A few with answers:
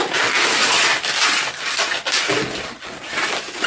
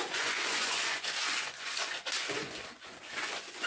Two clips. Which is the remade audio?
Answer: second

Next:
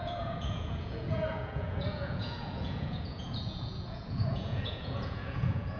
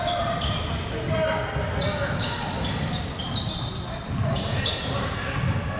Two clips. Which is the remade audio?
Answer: first